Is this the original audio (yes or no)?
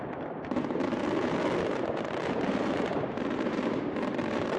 yes